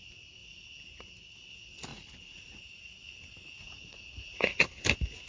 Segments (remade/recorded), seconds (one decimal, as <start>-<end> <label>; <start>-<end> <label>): 0.0-1.9 recorded; 1.9-2.6 remade; 2.6-3.6 recorded; 3.6-4.6 remade; 4.6-5.3 recorded

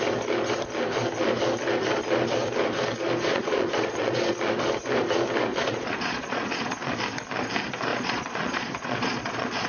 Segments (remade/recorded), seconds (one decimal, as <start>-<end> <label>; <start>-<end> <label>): 0.0-3.3 recorded; 3.3-4.3 remade; 4.3-5.5 recorded; 5.5-6.9 remade; 6.9-7.9 recorded; 7.9-9.7 remade